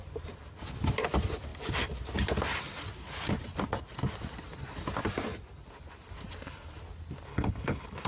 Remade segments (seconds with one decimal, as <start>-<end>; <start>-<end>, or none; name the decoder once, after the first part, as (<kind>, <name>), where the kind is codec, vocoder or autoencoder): 7.3-8.1 (codec, HILCodec)